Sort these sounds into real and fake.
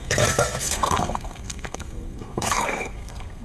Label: fake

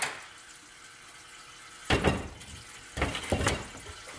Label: real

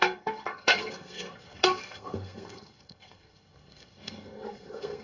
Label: fake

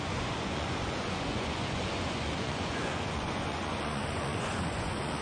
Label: fake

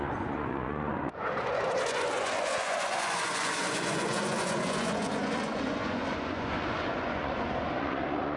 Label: fake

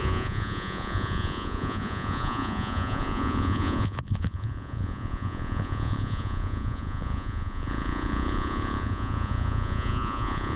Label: fake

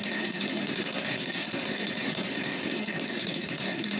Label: fake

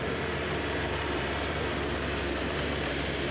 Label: fake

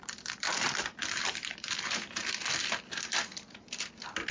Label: real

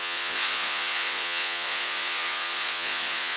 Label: fake